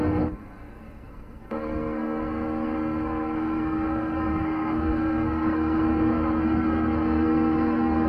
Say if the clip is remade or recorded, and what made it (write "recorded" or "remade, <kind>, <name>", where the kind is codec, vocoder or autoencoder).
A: remade, codec, SNAC